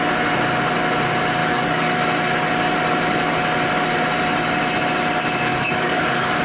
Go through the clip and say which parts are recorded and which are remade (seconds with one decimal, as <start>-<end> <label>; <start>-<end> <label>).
0.0-1.4 recorded; 1.4-2.0 remade; 2.0-5.5 recorded; 5.5-6.4 remade